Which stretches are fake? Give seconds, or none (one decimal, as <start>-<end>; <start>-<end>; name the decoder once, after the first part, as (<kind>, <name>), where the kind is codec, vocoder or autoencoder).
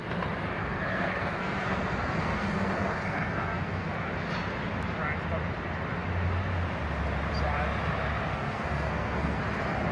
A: 0.6-3.9 (codec, SNAC); 8.3-9.4